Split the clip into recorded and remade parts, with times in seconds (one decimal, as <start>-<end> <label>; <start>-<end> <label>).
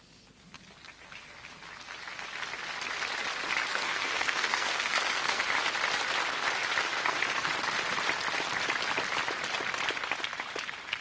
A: 0.0-3.7 recorded; 3.7-5.4 remade; 5.4-6.9 recorded; 6.9-7.5 remade; 7.5-11.0 recorded